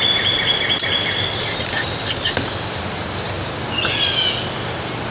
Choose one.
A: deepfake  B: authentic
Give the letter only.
B